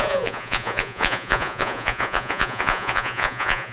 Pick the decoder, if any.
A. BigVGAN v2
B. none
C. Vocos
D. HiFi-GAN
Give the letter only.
C